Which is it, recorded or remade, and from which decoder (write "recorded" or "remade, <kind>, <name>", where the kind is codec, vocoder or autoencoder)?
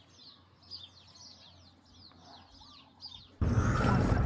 recorded